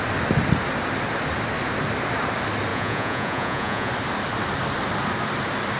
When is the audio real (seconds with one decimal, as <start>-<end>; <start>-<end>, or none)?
0.0-2.7; 3.9-5.8